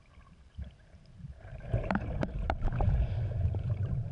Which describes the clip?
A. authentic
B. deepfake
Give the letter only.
B